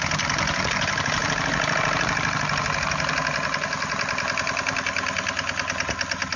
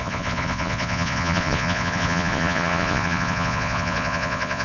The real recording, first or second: first